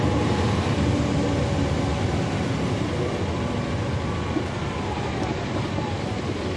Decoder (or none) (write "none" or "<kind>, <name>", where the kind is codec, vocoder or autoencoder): none